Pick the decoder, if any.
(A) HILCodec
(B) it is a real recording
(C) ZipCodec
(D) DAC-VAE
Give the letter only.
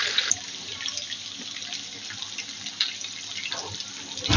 B